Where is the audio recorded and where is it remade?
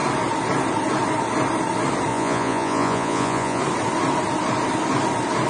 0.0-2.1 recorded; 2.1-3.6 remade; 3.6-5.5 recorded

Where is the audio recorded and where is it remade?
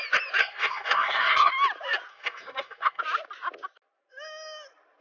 0.0-0.4 recorded; 0.4-1.5 remade; 1.5-2.1 recorded; 2.1-3.0 remade; 3.0-5.0 recorded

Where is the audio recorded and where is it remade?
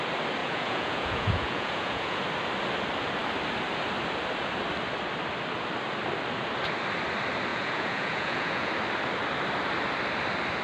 0.0-0.4 recorded; 0.4-2.2 remade; 2.2-7.5 recorded; 7.5-8.7 remade; 8.7-10.6 recorded